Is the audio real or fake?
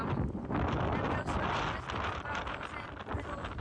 real